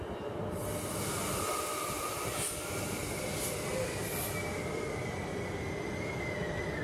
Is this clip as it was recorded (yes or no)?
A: yes